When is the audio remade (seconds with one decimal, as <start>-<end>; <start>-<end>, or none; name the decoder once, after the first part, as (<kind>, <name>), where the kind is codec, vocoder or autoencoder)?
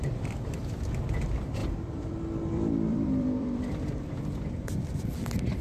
1.6-5.0 (vocoder, BigVGAN v2)